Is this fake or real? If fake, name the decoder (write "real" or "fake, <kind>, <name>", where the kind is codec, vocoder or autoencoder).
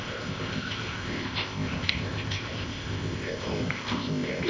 fake, codec, ZipCodec